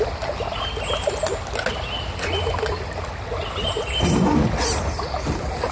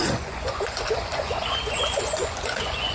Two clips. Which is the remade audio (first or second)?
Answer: second